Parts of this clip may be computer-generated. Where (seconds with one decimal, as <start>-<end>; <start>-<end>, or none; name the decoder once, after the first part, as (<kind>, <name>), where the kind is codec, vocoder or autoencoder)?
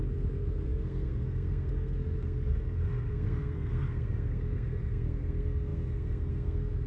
0.0-6.9 (codec, SNAC)